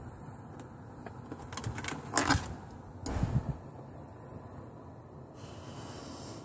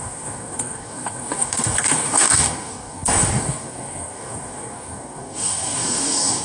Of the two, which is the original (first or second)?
first